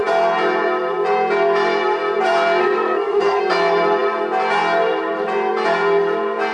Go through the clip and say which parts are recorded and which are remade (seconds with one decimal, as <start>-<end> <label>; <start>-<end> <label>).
0.0-2.6 recorded; 2.6-3.4 remade; 3.4-6.5 recorded